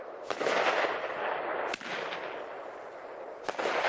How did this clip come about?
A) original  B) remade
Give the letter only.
A